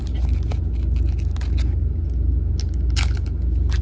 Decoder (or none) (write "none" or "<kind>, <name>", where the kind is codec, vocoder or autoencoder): none